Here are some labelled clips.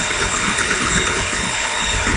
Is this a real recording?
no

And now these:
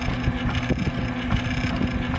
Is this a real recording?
yes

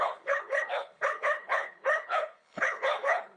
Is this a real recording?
no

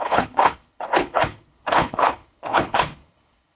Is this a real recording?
no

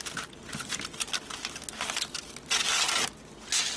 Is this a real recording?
yes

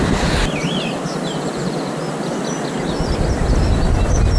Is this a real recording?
yes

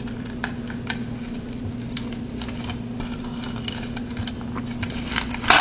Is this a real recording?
yes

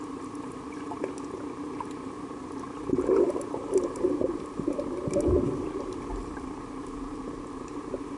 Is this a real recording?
yes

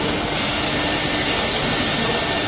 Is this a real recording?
yes